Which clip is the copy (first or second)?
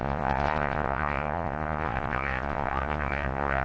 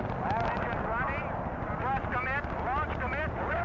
first